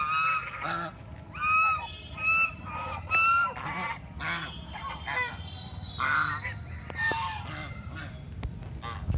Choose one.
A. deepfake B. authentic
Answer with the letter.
B